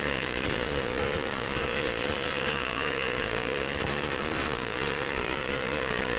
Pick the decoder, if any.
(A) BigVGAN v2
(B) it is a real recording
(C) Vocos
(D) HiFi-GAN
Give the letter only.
C